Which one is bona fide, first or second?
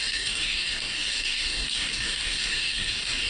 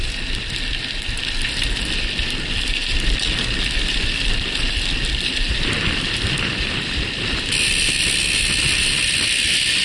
second